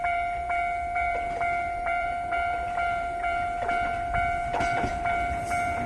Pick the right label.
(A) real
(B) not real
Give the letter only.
B